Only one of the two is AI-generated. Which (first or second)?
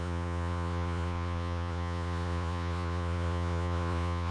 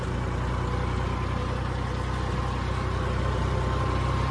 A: first